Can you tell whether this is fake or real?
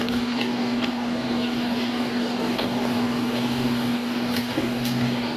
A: fake